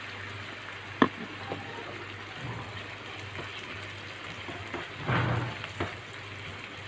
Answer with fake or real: real